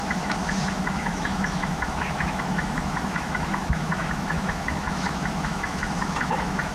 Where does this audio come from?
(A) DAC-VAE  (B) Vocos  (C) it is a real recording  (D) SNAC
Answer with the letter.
A